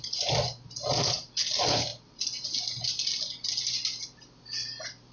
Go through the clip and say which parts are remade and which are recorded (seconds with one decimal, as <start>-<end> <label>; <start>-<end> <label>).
0.0-5.1 recorded